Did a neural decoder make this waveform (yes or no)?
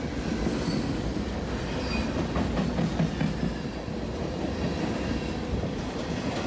no